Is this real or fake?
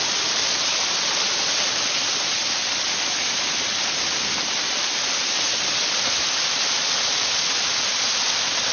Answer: real